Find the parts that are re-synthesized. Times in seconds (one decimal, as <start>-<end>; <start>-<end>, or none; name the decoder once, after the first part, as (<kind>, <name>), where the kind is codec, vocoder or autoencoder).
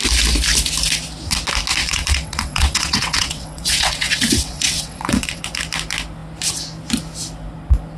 1.8-5.4 (vocoder, WaveNeXt)